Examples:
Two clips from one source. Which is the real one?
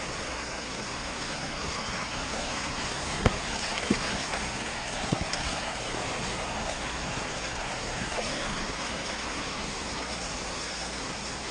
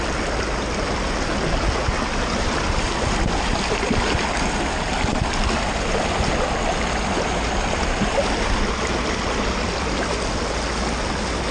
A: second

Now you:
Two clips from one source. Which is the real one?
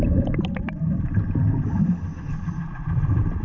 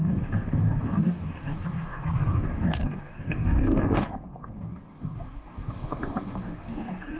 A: first